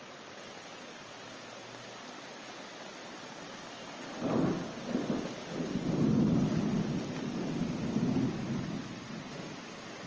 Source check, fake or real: real